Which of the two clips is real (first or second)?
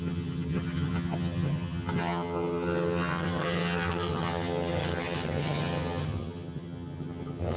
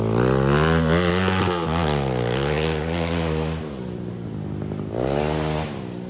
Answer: second